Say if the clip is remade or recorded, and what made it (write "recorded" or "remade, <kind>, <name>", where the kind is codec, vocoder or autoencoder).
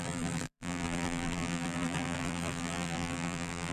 remade, vocoder, BigVGAN v2